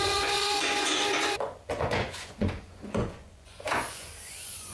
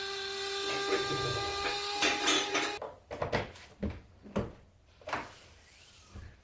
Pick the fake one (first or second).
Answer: first